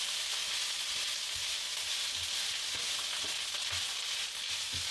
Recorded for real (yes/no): yes